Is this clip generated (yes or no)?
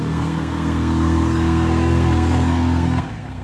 yes